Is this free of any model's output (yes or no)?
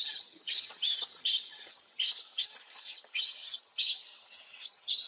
no